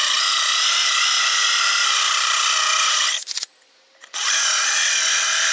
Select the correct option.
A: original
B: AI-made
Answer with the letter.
A